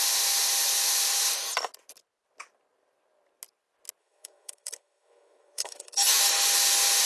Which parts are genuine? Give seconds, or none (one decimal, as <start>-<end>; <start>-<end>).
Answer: 0.0-4.0; 6.2-7.1